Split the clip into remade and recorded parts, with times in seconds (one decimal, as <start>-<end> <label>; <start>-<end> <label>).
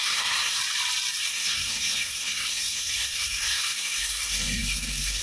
0.0-0.6 remade; 0.6-1.2 recorded; 1.2-5.2 remade